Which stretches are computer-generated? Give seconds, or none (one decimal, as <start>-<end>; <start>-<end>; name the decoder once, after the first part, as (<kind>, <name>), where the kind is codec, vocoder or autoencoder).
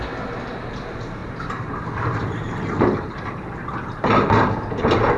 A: 1.2-1.7 (vocoder, BigVGAN v2); 2.1-5.2